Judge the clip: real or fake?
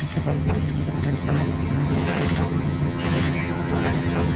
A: fake